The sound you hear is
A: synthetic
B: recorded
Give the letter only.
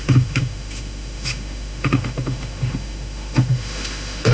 A